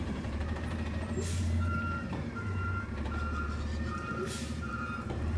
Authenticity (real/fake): fake